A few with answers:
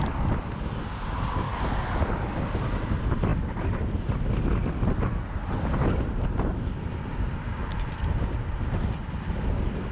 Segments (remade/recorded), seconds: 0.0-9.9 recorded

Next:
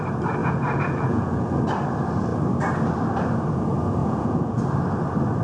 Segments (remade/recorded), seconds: 0.0-0.4 recorded; 0.4-1.6 remade; 1.6-4.0 recorded; 4.0-4.6 remade; 4.6-5.4 recorded

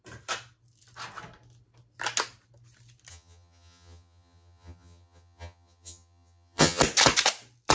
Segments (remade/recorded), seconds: 0.0-3.1 recorded; 3.1-6.8 remade; 6.8-7.7 recorded

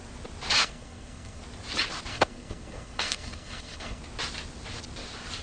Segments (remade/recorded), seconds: 0.0-0.6 recorded; 0.6-1.4 remade; 1.4-2.1 recorded; 2.1-4.0 remade; 4.0-5.4 recorded

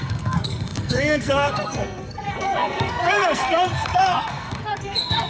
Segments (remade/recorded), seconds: 0.0-5.3 remade

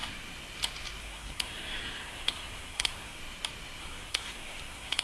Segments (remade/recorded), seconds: 0.0-1.0 recorded; 1.0-3.2 remade; 3.2-3.8 recorded; 3.8-5.0 remade

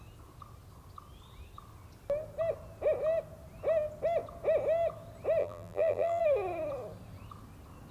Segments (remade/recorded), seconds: 0.0-5.4 recorded; 5.4-6.2 remade; 6.2-7.9 recorded